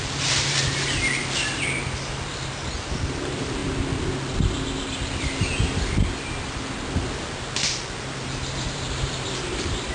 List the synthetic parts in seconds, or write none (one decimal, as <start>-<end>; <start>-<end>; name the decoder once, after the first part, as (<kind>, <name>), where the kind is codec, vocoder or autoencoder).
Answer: 0.0-3.6 (vocoder, BigVGAN v2); 7.2-9.9